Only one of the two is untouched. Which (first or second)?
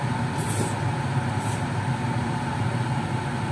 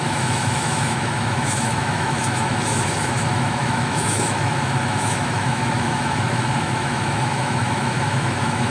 first